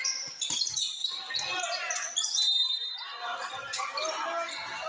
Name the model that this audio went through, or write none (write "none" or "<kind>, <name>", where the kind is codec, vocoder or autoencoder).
none